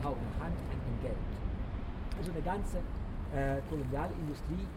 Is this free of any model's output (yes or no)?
yes